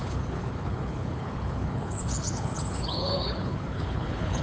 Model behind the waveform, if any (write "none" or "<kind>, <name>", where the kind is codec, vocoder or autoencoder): codec, HILCodec